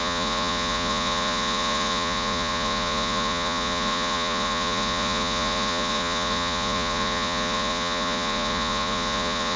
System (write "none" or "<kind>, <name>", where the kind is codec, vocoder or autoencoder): vocoder, Vocos